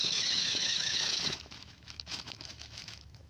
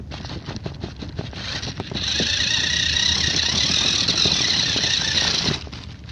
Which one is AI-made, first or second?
first